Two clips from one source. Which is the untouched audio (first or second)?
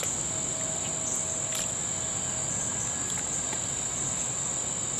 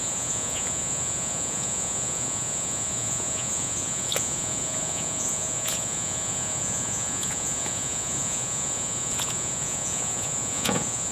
first